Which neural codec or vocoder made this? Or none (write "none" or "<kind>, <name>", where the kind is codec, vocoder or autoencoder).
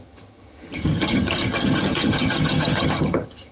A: vocoder, HiFi-GAN